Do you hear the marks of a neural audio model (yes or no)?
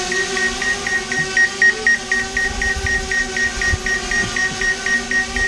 no